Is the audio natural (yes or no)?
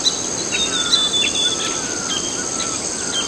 yes